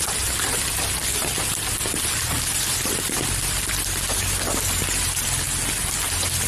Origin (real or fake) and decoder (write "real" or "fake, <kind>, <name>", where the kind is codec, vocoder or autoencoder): real